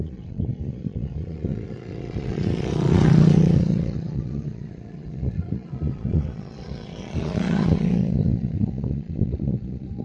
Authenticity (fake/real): fake